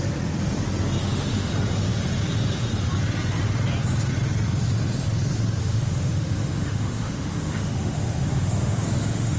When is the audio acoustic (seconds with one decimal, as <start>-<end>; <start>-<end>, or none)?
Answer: 0.0-1.0; 1.5-5.6